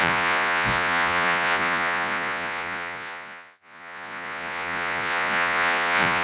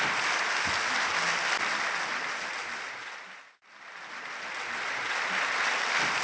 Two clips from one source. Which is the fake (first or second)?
first